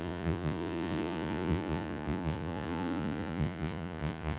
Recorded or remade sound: remade